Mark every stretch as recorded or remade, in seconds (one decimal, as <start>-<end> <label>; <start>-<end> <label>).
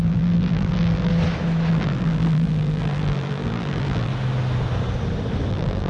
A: 0.0-1.1 remade; 1.1-1.7 recorded; 1.7-4.1 remade; 4.1-5.5 recorded; 5.5-5.9 remade